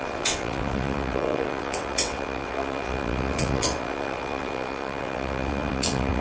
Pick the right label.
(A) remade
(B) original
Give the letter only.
A